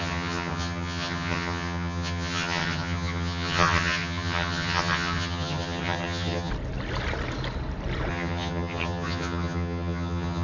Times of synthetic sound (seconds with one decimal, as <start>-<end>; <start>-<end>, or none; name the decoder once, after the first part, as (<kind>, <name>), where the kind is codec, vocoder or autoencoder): 0.0-6.5 (vocoder, HiFi-GAN); 8.1-10.4